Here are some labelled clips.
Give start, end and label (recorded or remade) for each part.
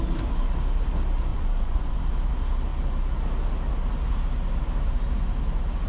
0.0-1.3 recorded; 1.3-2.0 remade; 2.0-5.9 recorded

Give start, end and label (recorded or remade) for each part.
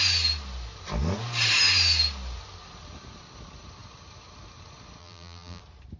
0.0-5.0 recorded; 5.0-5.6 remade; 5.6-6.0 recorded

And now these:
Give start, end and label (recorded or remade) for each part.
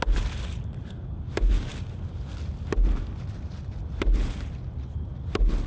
0.0-5.7 recorded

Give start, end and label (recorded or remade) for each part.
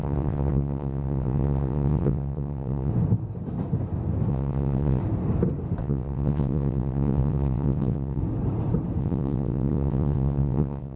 0.0-2.9 remade; 2.9-4.3 recorded; 4.3-5.0 remade; 5.0-5.8 recorded; 5.8-8.2 remade; 8.2-9.0 recorded; 9.0-11.0 remade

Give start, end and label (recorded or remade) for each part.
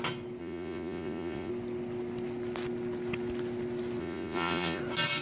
0.0-0.4 recorded; 0.4-1.5 remade; 1.5-4.0 recorded; 4.0-4.8 remade; 4.8-5.2 recorded